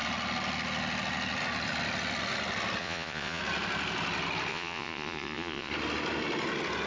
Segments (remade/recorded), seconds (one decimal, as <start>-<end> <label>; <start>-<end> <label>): 0.0-2.8 recorded; 2.8-3.4 remade; 3.4-4.5 recorded; 4.5-5.7 remade; 5.7-6.9 recorded